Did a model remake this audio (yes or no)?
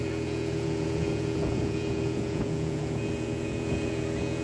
yes